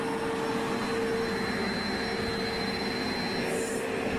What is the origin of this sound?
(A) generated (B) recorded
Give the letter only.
B